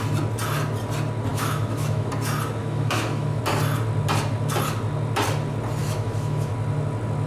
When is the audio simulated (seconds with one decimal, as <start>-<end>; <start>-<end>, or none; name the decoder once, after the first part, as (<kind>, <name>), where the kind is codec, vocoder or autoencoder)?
1.3-2.1 (autoencoder, DAC-VAE); 2.6-3.4; 5.8-6.5